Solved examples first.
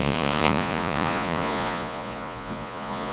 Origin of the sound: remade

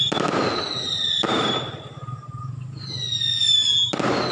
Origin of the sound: recorded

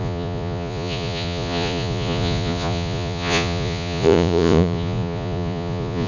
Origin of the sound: remade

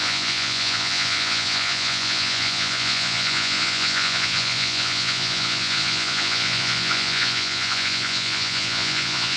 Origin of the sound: remade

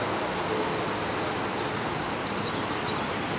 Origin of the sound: recorded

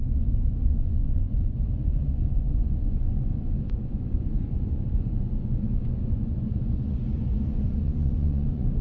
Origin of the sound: remade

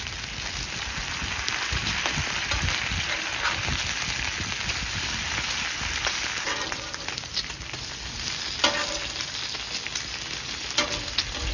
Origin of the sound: recorded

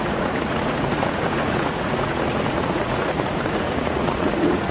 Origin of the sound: remade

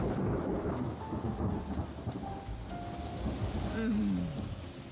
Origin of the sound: recorded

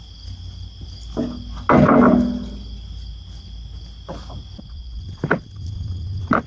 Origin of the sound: recorded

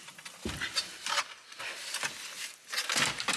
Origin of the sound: recorded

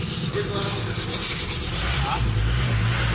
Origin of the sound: recorded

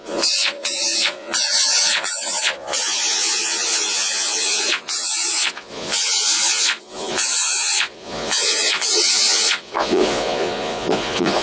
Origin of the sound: remade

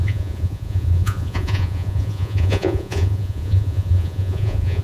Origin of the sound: remade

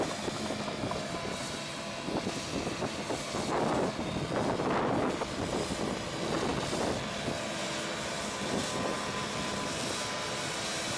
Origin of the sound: recorded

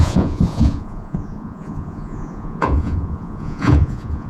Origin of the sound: remade